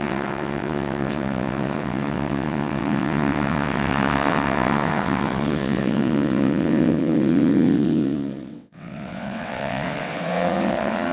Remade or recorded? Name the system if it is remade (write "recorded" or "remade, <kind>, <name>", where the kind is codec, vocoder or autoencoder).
remade, vocoder, WaveNeXt